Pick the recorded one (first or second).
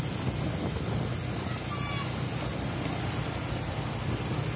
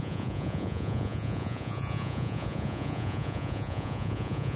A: first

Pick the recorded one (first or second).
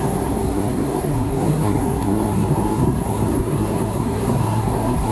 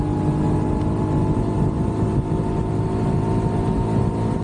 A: second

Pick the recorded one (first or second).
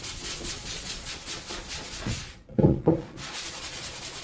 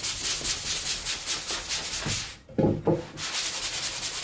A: second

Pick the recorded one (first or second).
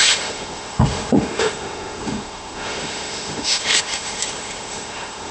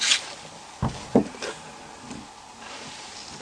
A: second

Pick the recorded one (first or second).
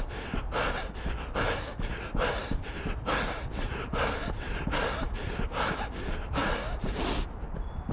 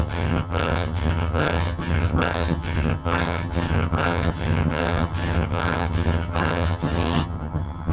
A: first